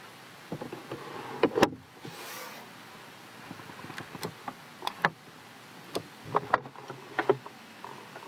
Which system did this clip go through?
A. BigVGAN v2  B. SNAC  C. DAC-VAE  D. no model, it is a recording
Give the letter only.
D